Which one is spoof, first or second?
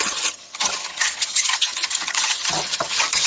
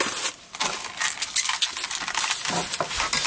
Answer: first